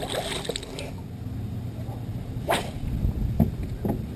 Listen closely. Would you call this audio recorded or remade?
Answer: recorded